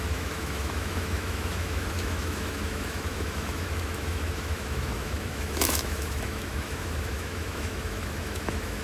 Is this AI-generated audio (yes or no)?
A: yes